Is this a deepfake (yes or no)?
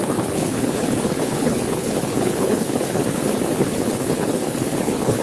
yes